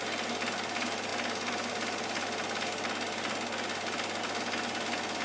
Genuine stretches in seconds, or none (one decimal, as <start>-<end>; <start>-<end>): 0.0-5.2